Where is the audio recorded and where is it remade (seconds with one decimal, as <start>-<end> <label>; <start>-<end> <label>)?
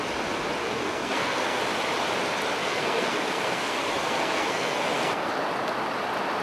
0.0-0.6 recorded; 0.6-1.6 remade; 1.6-2.6 recorded; 2.6-5.3 remade; 5.3-6.4 recorded